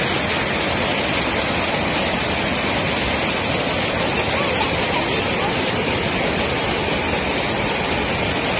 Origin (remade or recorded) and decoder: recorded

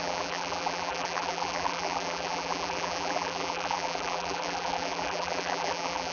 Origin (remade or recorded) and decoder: remade, vocoder, BigVGAN v2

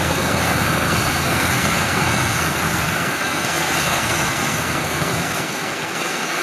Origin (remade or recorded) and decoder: remade, codec, SNAC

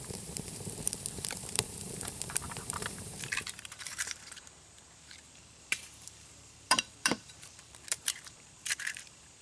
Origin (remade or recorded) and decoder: remade, vocoder, BigVGAN v2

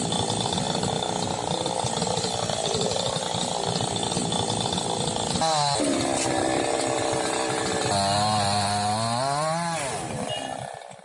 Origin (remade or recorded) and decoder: recorded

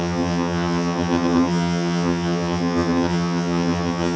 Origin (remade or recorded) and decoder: remade, vocoder, HiFi-GAN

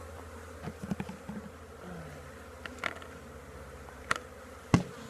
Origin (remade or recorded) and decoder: recorded